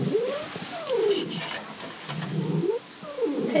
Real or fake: real